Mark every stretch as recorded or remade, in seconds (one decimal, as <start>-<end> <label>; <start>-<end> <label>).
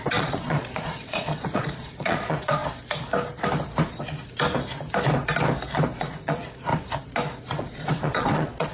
0.0-2.6 remade; 2.6-6.0 recorded; 6.0-6.7 remade; 6.7-7.4 recorded; 7.4-8.7 remade